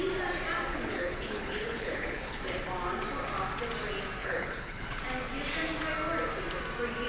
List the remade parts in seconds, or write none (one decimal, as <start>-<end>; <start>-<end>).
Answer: 0.7-2.4; 4.2-5.0